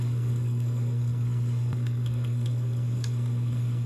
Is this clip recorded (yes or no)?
no